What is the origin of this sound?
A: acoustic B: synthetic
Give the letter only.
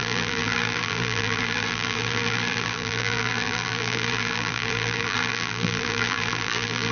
B